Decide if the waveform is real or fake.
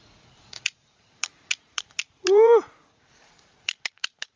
fake